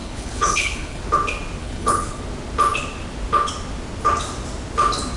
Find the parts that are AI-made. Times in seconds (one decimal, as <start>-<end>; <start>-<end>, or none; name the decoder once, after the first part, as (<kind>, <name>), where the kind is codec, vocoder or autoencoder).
0.0-1.0 (codec, HILCodec); 1.6-2.2